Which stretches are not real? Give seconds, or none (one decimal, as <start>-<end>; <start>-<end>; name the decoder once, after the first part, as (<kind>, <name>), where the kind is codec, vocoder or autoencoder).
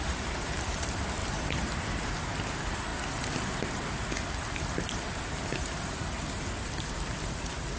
none